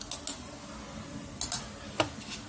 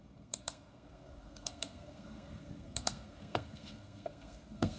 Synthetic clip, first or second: second